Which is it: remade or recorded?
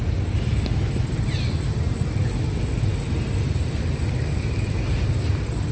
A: recorded